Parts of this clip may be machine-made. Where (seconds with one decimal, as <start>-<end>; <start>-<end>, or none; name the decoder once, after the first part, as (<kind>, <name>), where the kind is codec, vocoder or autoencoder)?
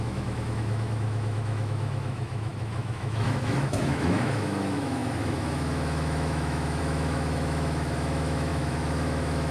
0.0-9.5 (autoencoder, DAC-VAE)